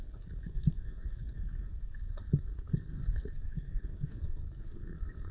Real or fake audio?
fake